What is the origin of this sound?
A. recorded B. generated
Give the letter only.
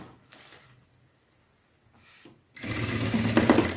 A